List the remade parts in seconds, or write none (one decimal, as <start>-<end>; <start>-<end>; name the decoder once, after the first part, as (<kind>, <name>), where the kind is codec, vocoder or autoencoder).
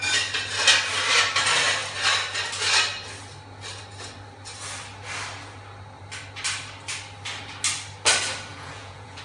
8.5-9.2 (vocoder, Vocos)